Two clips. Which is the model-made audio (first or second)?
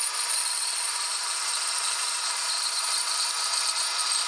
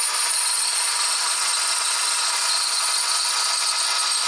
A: first